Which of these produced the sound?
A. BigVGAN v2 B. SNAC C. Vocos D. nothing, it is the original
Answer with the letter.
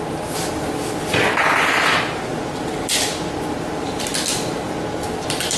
D